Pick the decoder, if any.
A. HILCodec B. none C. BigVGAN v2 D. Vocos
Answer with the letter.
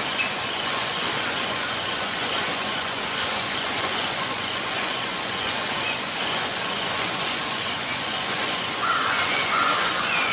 D